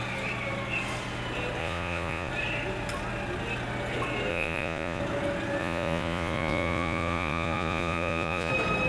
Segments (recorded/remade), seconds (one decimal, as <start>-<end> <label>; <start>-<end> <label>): 0.0-1.6 recorded; 1.6-2.3 remade; 2.3-4.3 recorded; 4.3-5.0 remade; 5.0-5.6 recorded; 5.6-8.5 remade; 8.5-8.9 recorded